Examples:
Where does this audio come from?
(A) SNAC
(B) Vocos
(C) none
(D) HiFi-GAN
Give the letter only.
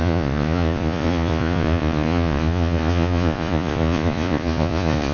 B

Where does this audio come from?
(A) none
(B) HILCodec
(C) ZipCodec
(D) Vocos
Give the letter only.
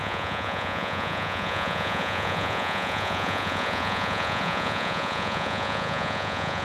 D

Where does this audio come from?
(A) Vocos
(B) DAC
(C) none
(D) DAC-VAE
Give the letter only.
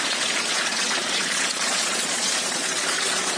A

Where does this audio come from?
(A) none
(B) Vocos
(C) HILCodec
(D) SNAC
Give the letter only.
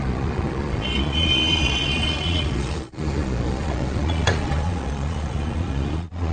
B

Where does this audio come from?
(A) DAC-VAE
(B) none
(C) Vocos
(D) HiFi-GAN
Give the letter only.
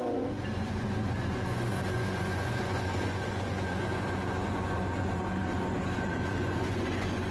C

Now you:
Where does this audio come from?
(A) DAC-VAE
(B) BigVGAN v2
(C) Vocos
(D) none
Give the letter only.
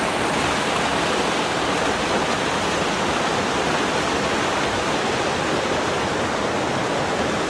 D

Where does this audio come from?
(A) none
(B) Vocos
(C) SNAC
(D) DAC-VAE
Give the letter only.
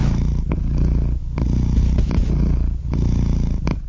A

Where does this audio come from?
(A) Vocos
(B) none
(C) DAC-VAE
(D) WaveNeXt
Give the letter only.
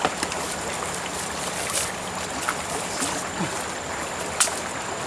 B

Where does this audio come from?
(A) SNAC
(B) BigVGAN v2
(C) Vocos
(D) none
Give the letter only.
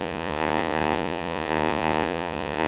C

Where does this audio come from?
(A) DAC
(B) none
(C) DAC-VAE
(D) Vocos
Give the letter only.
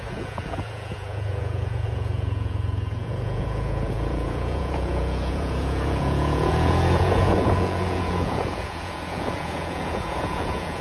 D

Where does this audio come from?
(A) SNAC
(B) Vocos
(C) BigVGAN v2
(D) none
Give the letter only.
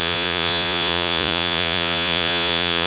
B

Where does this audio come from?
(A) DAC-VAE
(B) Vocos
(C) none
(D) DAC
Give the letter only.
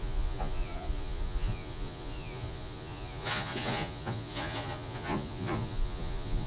B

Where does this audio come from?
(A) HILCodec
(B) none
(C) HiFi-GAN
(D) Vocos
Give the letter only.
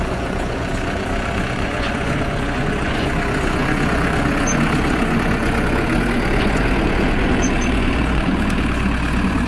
D